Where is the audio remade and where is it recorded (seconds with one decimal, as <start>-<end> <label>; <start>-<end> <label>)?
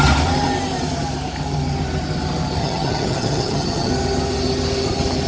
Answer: 0.0-2.6 recorded; 2.6-3.9 remade; 3.9-5.3 recorded